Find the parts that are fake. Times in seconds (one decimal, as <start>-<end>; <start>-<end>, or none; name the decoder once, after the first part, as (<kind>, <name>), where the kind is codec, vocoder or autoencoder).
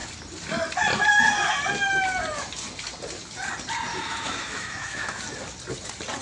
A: 3.9-5.2 (autoencoder, DAC-VAE)